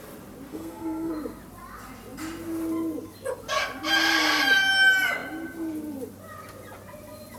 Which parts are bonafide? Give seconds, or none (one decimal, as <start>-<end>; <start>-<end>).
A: 0.0-0.5; 1.1-7.4